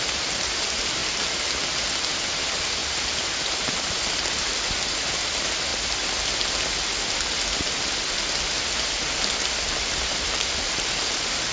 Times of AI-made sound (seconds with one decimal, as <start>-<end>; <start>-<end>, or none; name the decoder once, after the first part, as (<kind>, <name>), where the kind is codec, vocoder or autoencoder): 0.0-1.0 (vocoder, BigVGAN v2); 1.9-5.7; 10.0-11.5